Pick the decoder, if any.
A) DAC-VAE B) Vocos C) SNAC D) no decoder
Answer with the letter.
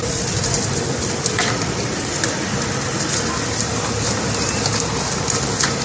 D